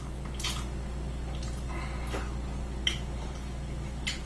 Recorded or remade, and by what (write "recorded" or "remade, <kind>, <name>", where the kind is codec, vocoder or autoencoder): recorded